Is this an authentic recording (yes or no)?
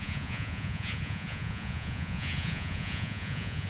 no